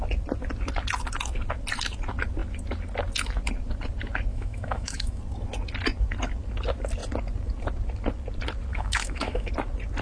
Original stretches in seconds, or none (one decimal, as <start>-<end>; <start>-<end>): 0.0-4.3; 5.2-8.7; 9.5-10.0